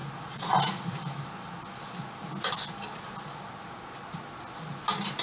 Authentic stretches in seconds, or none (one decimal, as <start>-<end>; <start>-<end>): 0.0-5.2